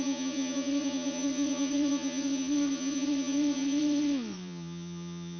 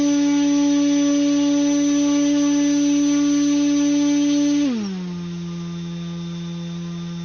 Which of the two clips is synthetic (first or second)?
first